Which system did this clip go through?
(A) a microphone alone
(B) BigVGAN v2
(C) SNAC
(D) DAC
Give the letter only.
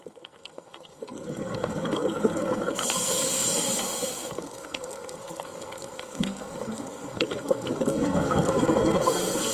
C